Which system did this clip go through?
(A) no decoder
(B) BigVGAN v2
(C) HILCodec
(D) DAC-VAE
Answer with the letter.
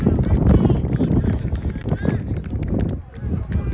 A